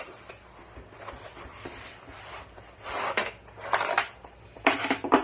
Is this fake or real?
fake